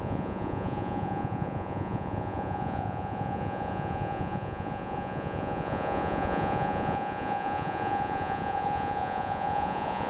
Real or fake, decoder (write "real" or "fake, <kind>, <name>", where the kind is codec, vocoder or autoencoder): fake, vocoder, Vocos